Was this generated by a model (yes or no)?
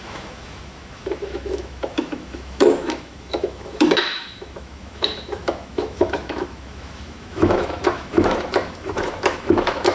yes